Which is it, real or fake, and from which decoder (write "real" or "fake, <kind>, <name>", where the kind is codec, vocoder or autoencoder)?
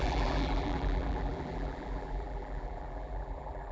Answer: fake, vocoder, BigVGAN v2